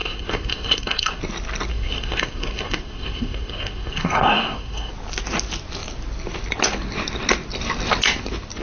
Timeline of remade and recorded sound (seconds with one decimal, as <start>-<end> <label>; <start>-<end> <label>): 0.0-1.2 remade; 1.2-1.7 recorded; 1.7-4.9 remade; 4.9-8.6 recorded